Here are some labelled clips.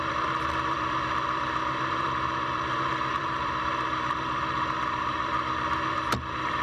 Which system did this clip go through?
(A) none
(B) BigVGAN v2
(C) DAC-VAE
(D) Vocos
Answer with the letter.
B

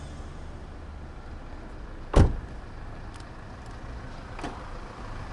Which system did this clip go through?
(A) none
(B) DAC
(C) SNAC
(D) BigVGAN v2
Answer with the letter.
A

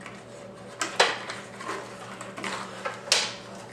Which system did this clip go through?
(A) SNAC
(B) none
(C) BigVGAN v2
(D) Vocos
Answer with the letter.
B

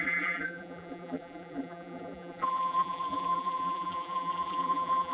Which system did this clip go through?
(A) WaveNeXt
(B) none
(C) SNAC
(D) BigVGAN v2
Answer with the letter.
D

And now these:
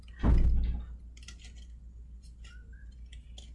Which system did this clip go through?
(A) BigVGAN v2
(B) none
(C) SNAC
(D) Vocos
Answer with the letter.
B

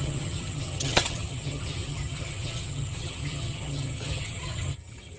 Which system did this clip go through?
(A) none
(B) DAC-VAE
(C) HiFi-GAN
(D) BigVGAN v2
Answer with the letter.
C